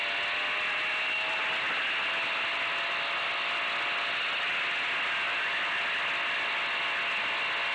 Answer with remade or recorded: recorded